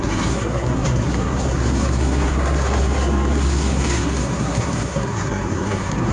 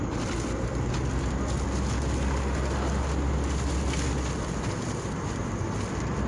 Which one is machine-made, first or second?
first